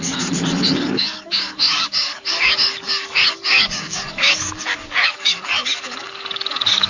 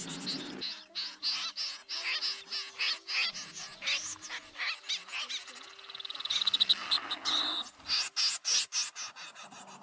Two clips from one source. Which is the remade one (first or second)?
first